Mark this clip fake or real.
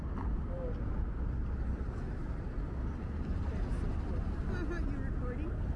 real